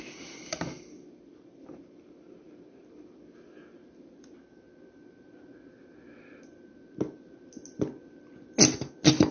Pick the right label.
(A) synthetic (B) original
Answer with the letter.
B